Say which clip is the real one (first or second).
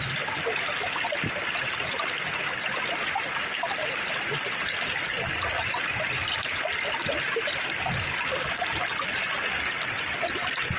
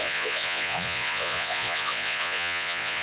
first